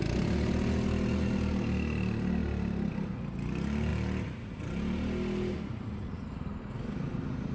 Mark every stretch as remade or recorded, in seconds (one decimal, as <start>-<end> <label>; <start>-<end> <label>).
0.0-7.5 recorded